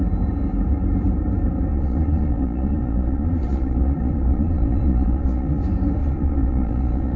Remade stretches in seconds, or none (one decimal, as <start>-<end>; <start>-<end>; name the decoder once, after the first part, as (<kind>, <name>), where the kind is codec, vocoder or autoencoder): 1.7-5.6 (vocoder, Vocos); 6.0-7.2